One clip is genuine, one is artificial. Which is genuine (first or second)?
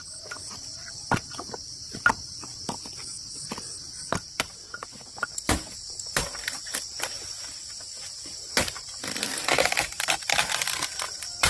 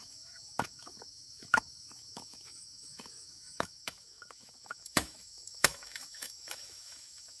first